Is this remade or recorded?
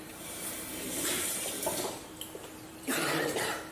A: remade